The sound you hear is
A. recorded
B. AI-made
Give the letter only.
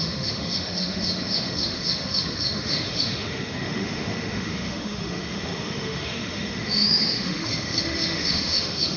B